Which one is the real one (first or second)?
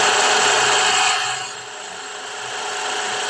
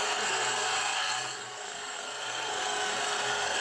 first